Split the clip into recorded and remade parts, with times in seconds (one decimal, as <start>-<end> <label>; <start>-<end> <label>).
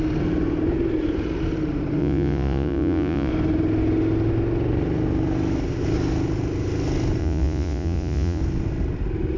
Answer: 0.0-2.0 recorded; 2.0-3.3 remade; 3.3-7.2 recorded; 7.2-8.4 remade; 8.4-9.4 recorded